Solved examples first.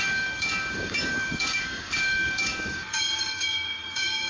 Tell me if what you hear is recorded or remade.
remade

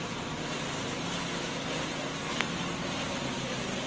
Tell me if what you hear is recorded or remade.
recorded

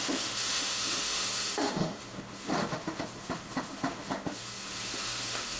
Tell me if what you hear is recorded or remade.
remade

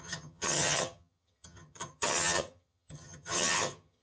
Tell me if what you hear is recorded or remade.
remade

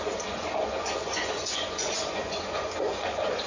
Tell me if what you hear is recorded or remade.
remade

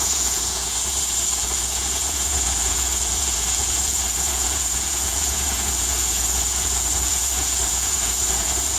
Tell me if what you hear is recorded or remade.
remade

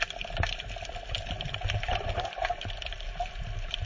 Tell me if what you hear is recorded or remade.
recorded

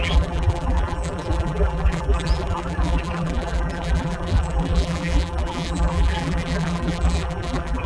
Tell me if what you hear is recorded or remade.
remade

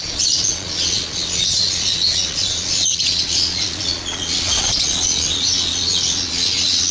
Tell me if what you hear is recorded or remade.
remade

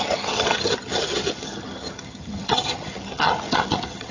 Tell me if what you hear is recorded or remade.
remade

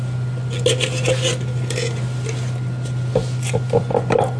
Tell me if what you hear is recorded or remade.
recorded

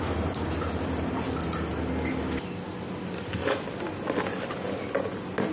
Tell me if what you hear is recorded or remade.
recorded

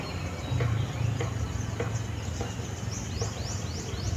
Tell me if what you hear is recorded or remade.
recorded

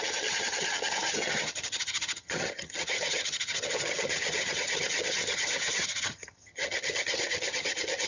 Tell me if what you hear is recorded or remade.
remade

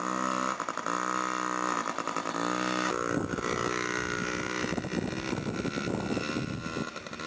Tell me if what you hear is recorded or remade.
recorded